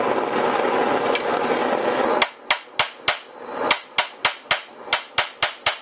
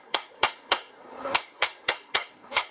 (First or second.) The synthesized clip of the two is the second